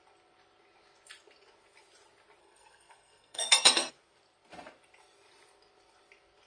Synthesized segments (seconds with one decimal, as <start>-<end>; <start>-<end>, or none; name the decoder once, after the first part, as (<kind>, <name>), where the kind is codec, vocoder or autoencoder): 2.4-3.9 (codec, SNAC)